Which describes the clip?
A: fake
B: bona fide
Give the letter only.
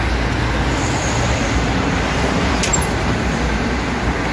B